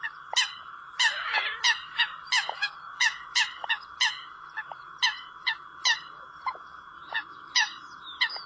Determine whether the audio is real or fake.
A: real